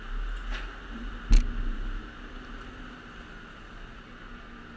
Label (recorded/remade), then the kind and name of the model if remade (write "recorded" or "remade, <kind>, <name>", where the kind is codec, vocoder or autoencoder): recorded